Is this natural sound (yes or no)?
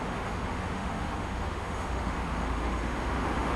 no